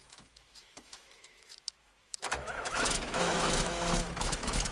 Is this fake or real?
fake